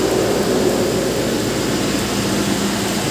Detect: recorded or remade recorded